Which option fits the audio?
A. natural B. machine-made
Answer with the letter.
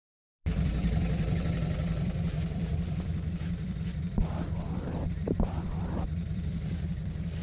B